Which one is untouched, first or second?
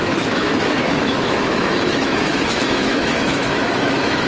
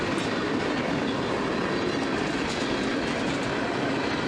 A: second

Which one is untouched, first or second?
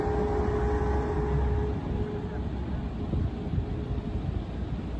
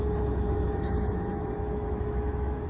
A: first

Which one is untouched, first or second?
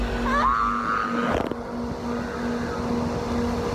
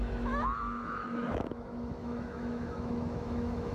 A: first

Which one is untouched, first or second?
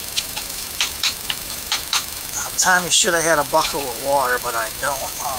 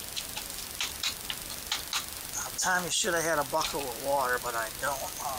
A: second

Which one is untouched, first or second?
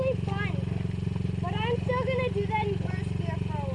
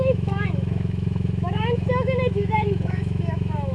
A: first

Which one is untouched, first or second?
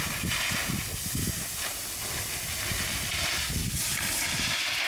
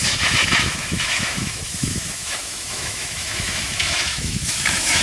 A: first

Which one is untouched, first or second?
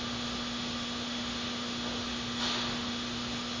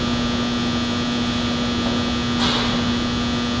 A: second